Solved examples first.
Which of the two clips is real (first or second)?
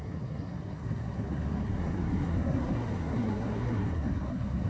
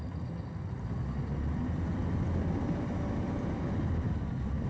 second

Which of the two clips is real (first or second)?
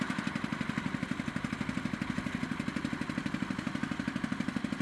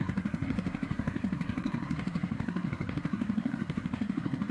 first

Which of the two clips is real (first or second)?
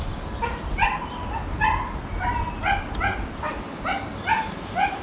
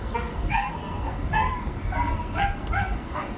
first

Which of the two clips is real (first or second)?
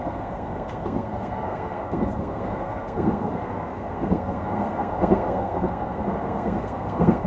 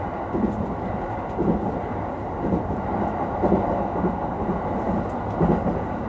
second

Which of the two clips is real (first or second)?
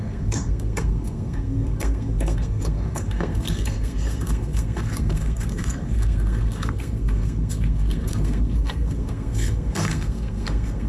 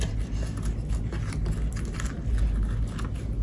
second